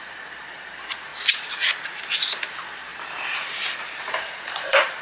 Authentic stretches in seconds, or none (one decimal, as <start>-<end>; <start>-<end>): 1.1-2.5